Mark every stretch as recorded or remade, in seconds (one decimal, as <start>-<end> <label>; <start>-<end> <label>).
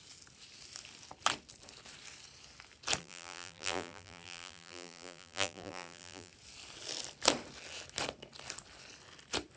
0.0-3.0 recorded; 3.0-6.3 remade; 6.3-9.6 recorded